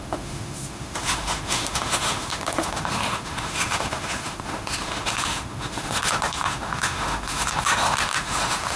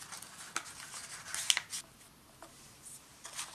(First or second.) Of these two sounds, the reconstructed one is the first